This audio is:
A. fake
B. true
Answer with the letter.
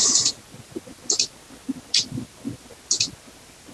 B